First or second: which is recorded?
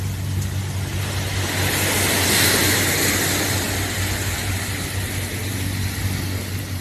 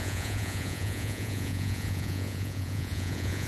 first